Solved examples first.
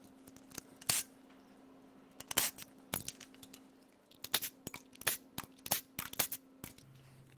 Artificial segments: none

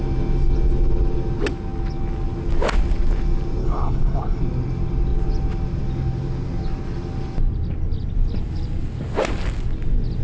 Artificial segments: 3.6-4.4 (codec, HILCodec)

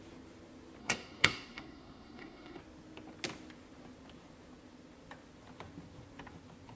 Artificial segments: 0.8-2.6 (codec, SNAC)

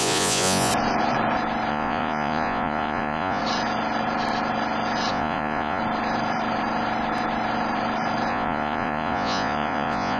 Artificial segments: 0.0-0.7 (vocoder, Vocos); 1.7-3.4; 5.1-5.8; 8.3-10.2

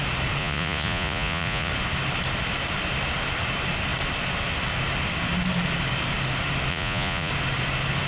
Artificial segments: 0.4-1.7 (vocoder, Vocos); 6.7-7.3

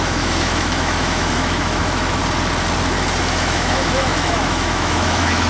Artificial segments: 0.0-2.2 (autoencoder, DAC-VAE); 3.2-5.5

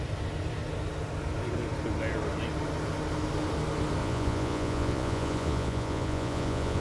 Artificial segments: 4.0-6.8 (vocoder, Vocos)

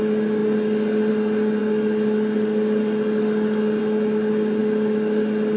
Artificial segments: none